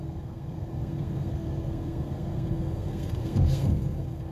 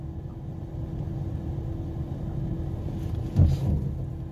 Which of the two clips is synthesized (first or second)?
first